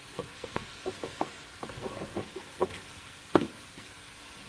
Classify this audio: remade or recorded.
remade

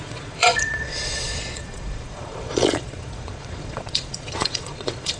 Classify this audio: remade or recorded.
remade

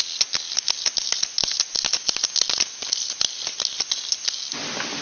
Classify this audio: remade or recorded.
recorded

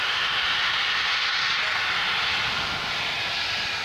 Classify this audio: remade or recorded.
recorded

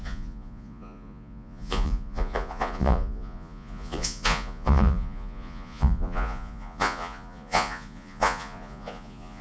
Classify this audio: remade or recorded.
remade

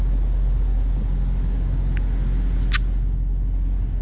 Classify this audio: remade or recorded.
recorded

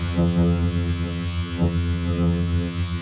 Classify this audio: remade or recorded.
remade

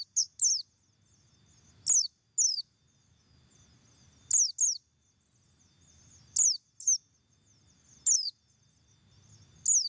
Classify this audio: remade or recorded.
recorded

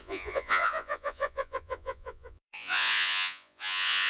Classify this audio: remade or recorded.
remade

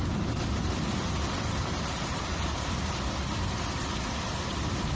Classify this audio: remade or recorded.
recorded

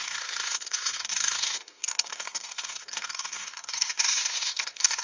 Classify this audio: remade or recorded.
remade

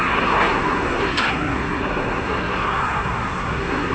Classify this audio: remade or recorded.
remade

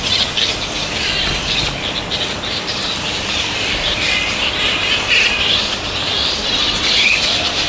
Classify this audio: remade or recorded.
remade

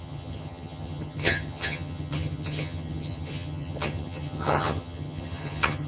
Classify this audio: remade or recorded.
remade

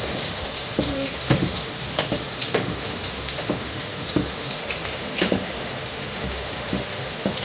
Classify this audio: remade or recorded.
remade